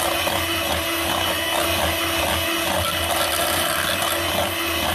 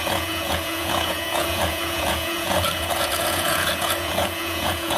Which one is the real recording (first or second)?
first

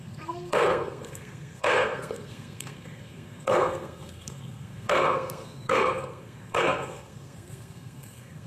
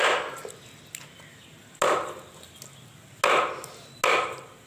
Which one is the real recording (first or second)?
second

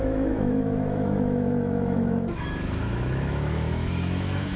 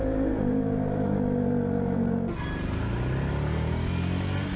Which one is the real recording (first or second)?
second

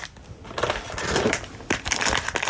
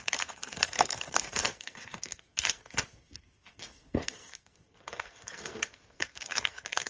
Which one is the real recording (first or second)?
first